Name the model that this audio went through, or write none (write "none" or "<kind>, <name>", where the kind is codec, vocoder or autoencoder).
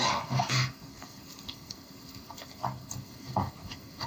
codec, SNAC